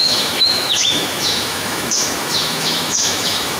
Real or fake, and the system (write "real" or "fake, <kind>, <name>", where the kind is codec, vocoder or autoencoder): fake, autoencoder, DAC-VAE